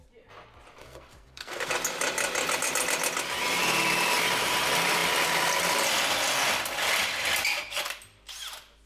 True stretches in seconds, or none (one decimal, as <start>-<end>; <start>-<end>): 0.0-0.8; 1.7-8.9